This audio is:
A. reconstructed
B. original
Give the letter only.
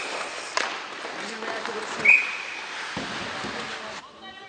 B